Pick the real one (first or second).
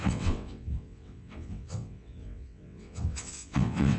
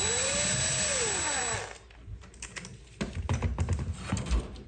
second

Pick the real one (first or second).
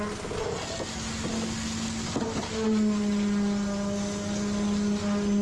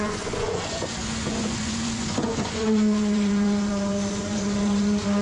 first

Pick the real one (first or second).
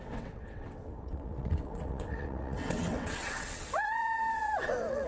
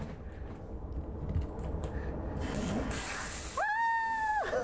second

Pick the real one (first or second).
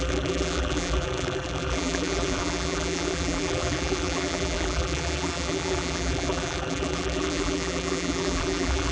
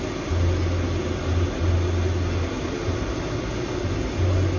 second